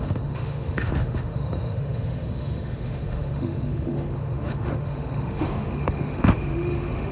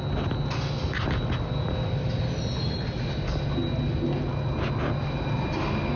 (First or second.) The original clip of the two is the second